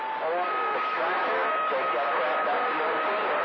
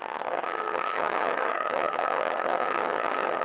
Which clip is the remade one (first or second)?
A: second